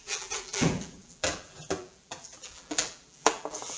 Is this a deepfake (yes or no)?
yes